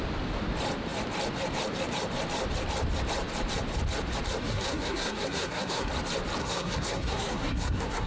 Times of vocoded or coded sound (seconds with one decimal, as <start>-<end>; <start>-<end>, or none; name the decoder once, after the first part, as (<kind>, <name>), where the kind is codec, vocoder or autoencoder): 4.4-5.9 (codec, SNAC); 6.4-8.1